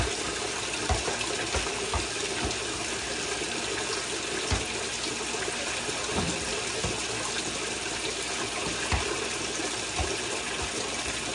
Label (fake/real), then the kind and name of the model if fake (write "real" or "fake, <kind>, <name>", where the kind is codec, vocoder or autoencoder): real